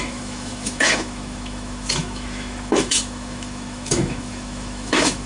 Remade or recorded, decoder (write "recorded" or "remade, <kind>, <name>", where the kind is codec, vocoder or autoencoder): remade, autoencoder, DAC-VAE